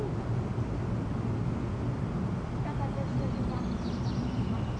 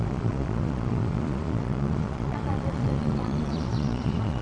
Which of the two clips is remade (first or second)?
second